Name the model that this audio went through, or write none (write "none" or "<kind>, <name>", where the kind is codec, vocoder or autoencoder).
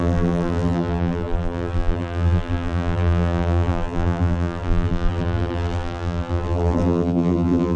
vocoder, BigVGAN v2